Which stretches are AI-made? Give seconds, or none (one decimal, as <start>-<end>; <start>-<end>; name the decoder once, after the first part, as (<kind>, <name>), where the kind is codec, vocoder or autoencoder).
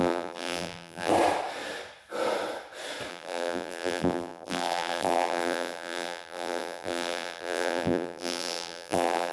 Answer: 0.0-1.1 (vocoder, BigVGAN v2); 3.1-9.3